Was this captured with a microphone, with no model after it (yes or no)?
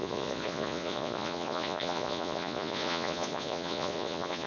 no